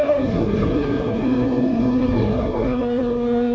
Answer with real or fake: fake